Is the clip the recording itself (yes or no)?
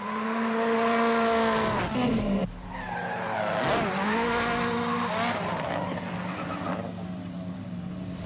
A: yes